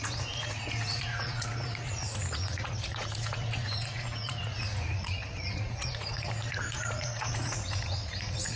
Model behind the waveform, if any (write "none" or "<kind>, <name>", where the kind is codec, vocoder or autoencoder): vocoder, Vocos